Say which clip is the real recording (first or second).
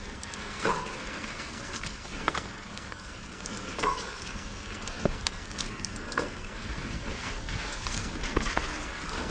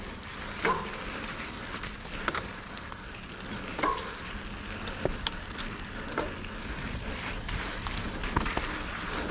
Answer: second